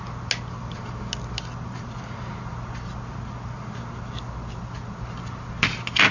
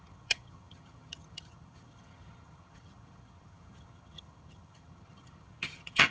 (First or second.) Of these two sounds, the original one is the first